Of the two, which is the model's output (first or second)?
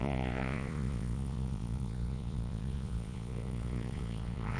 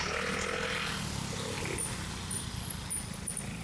first